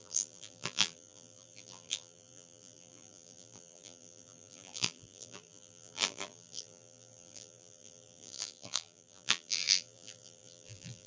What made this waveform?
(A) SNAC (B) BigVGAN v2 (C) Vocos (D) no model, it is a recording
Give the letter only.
B